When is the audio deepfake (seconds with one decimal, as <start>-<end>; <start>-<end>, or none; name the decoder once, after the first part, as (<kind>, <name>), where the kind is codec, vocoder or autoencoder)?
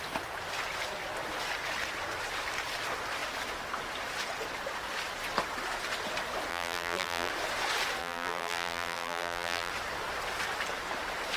6.5-7.3 (vocoder, BigVGAN v2); 8.0-9.7